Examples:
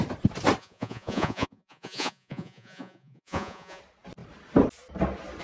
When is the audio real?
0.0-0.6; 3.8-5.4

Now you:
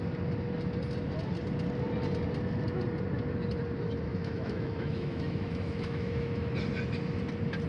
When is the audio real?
0.0-4.1; 6.5-7.7

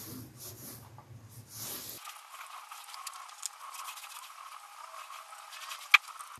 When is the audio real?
0.0-6.4

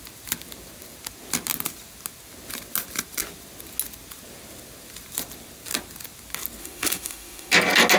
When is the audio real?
0.0-6.6; 7.5-8.0

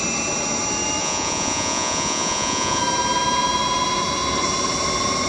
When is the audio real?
0.0-1.0; 2.8-5.3